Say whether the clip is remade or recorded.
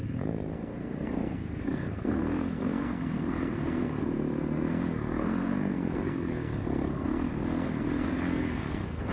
remade